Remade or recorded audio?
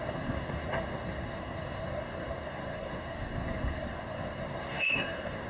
remade